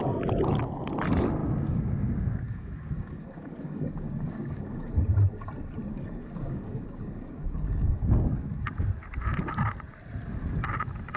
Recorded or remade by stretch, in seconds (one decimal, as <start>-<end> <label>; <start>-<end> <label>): 0.0-1.4 recorded; 1.4-4.9 remade; 4.9-5.9 recorded; 5.9-8.5 remade; 8.5-11.2 recorded